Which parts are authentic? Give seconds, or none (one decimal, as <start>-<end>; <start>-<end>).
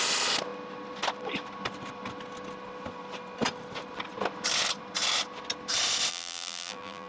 0.0-6.1